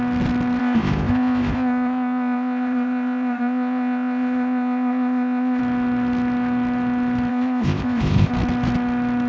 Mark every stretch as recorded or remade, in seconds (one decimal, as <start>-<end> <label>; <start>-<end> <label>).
0.0-0.6 recorded; 0.6-5.6 remade; 5.6-7.3 recorded; 7.3-8.3 remade; 8.3-9.3 recorded